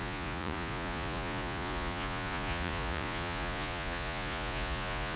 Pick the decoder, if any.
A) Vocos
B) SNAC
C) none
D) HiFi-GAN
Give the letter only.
A